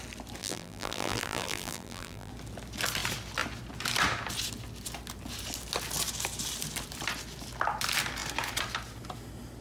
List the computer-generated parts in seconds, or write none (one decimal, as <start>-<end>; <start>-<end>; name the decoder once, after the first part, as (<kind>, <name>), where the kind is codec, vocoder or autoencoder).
0.4-2.3 (vocoder, BigVGAN v2)